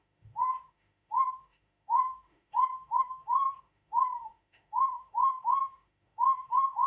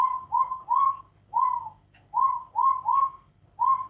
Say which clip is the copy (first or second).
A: first